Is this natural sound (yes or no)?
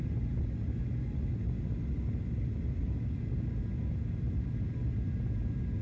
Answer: yes